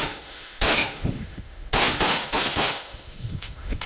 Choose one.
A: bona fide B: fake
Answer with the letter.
B